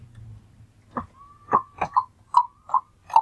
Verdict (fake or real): real